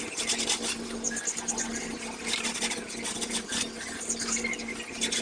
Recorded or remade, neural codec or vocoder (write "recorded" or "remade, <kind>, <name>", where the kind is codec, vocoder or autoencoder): remade, vocoder, BigVGAN v2